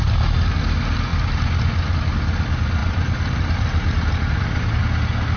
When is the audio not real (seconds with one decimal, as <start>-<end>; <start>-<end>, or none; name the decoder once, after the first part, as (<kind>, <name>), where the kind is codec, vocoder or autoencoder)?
1.1-1.6 (vocoder, BigVGAN v2); 2.8-4.5